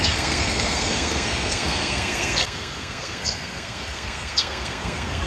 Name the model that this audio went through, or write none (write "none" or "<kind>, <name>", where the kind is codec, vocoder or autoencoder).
codec, SNAC